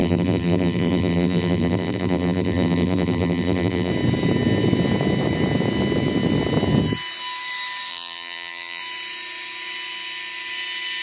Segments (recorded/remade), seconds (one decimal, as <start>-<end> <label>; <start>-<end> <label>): 0.0-3.9 remade; 3.9-7.9 recorded; 7.9-8.8 remade; 8.8-11.0 recorded